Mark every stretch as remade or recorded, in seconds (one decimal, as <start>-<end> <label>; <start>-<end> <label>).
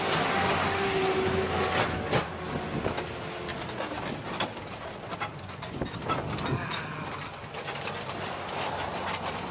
0.0-5.3 recorded; 5.3-5.8 remade; 5.8-9.5 recorded